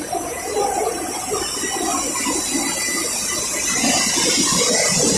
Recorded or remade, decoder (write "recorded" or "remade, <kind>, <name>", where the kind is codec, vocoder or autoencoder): recorded